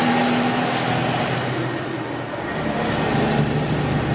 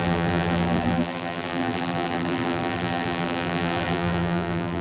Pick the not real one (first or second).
second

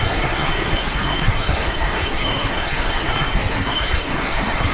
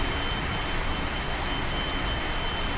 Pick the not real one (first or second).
first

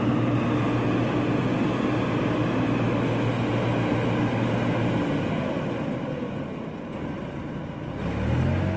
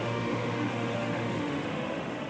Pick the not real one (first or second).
second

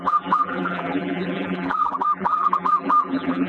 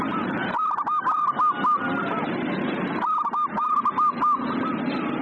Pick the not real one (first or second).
first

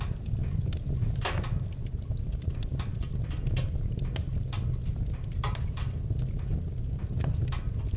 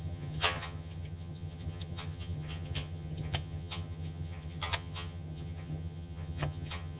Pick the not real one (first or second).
second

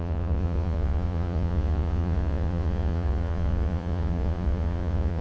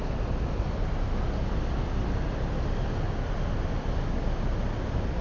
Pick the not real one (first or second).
first